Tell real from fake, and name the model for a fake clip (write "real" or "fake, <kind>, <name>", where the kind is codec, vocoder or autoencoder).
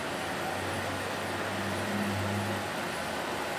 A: real